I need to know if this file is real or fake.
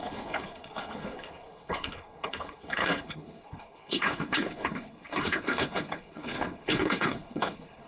fake